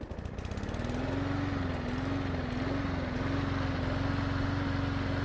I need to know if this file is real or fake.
real